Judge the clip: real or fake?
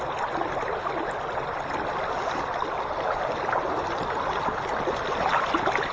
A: real